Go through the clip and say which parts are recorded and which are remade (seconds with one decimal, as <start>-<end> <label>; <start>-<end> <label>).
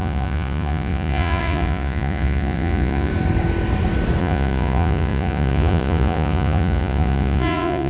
0.0-3.1 remade; 3.1-4.2 recorded; 4.2-7.9 remade